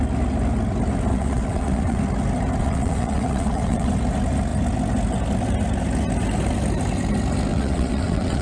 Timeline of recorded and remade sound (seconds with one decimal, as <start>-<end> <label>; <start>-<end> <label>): 0.0-1.1 recorded; 1.1-2.0 remade; 2.0-2.6 recorded; 2.6-3.9 remade; 3.9-7.5 recorded; 7.5-8.4 remade